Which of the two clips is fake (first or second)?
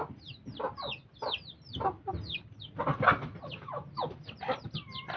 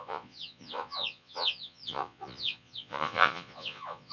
second